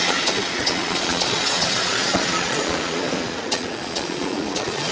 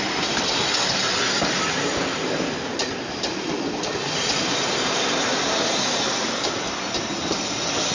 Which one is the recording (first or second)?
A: second